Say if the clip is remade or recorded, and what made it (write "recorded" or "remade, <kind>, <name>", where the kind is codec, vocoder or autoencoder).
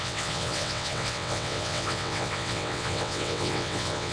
remade, vocoder, WaveNeXt